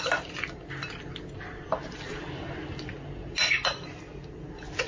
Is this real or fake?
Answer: real